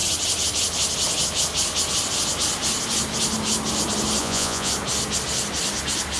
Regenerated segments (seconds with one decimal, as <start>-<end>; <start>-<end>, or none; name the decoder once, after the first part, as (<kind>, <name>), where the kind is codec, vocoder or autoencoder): 4.2-4.7 (vocoder, Vocos)

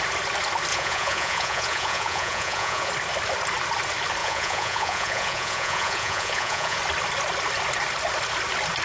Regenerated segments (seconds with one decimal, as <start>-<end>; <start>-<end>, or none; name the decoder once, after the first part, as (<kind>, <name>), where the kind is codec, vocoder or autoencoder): 0.7-2.9 (vocoder, Vocos); 4.2-6.8

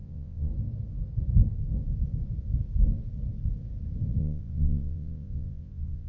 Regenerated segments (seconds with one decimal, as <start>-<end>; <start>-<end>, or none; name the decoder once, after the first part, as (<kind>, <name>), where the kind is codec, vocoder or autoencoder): 0.0-0.5 (vocoder, Vocos); 4.2-6.1

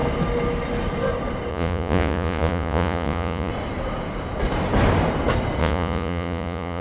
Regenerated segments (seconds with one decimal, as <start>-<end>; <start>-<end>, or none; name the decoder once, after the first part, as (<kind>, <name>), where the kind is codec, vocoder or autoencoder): 1.5-3.5 (vocoder, Vocos); 5.6-6.8

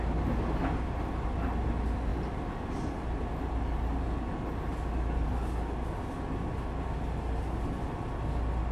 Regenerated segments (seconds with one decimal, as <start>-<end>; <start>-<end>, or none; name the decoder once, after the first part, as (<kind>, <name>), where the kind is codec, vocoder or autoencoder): none

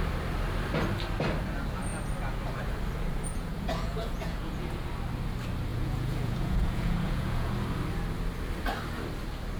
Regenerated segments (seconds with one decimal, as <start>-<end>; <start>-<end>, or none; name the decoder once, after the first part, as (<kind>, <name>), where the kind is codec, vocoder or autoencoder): 3.3-4.5 (vocoder, Vocos); 5.7-7.5